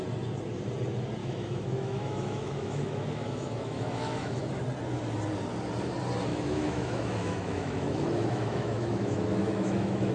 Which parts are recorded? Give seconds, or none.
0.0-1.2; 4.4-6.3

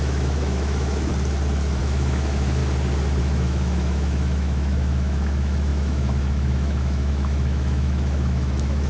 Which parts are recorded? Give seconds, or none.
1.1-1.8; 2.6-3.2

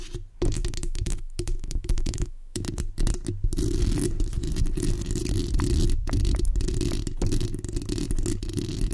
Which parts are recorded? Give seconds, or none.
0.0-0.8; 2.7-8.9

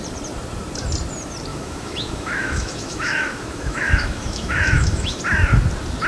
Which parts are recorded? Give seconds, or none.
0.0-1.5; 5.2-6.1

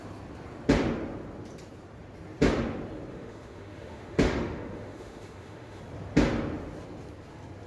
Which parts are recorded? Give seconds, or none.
0.0-3.1; 5.8-7.7